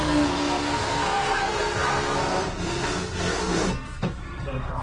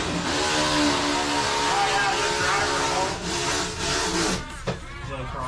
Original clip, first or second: second